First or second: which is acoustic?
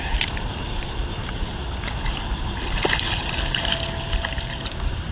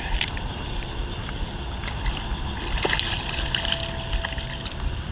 second